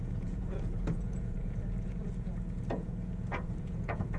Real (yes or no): no